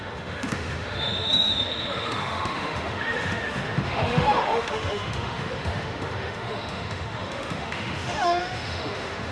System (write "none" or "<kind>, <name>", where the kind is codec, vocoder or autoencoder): autoencoder, DAC-VAE